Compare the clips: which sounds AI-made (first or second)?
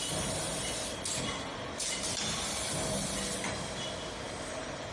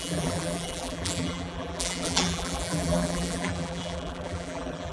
second